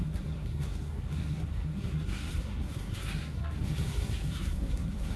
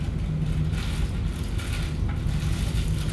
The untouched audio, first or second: second